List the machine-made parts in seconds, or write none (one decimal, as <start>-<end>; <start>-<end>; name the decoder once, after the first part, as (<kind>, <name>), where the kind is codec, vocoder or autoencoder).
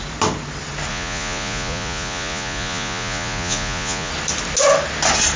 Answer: 0.9-4.1 (vocoder, Vocos)